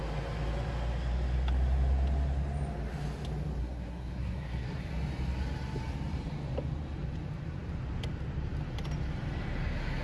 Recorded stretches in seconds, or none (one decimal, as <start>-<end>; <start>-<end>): 0.0-3.6; 4.8-10.0